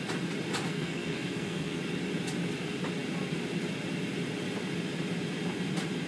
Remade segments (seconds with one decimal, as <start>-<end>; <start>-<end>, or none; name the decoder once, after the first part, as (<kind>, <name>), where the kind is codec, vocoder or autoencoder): 0.7-1.8 (codec, SNAC)